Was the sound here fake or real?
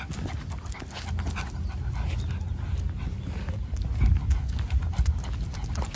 real